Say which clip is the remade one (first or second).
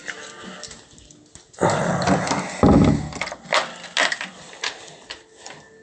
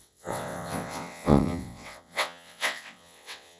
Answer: second